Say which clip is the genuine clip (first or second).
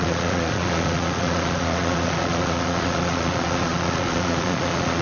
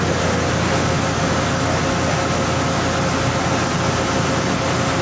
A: second